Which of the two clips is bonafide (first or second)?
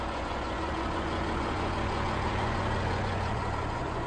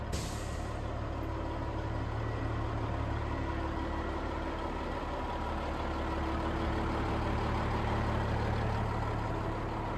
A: second